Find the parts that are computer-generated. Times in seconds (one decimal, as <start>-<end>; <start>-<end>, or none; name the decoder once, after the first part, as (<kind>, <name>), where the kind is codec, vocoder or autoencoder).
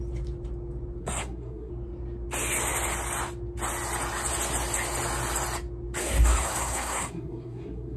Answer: 1.0-1.7 (codec, SNAC); 6.0-8.0